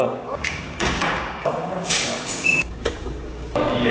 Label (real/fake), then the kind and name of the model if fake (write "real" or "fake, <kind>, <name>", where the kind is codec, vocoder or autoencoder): fake, codec, DAC